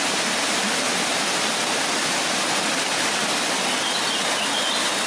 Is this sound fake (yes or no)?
no